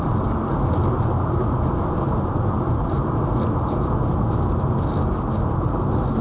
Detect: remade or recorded recorded